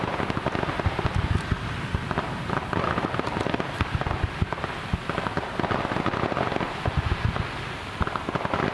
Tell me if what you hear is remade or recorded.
recorded